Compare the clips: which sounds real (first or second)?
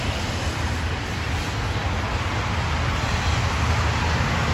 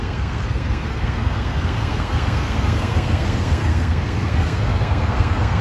first